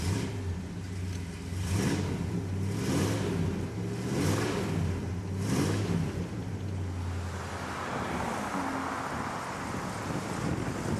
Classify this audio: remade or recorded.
recorded